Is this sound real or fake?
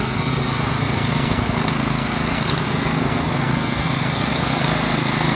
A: fake